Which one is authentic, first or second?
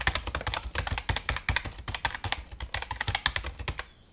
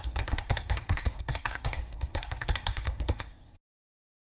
first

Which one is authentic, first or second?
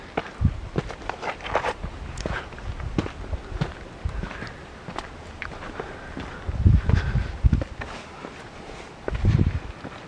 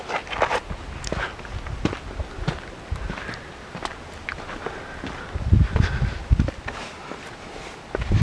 second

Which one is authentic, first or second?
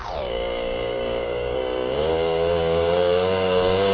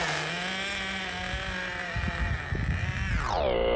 second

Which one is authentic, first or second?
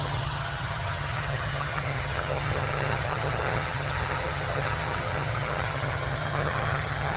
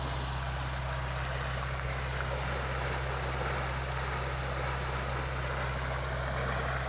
second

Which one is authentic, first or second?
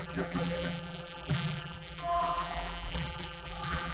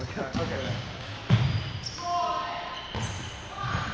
second